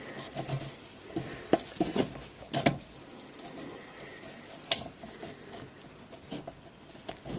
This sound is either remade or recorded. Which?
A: recorded